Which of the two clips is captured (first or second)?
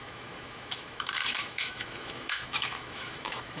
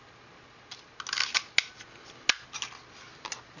second